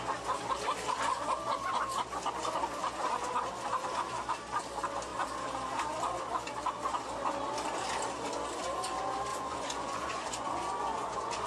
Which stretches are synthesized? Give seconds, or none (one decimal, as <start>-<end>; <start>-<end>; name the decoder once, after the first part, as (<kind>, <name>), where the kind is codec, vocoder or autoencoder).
9.3-11.5 (vocoder, Vocos)